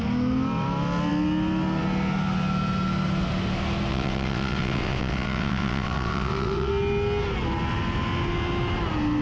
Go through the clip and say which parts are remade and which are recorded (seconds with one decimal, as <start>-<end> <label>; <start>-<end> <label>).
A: 0.0-3.9 recorded; 3.9-6.7 remade; 6.7-9.2 recorded